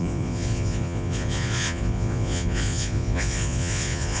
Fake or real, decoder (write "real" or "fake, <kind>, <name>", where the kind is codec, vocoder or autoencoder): fake, vocoder, Vocos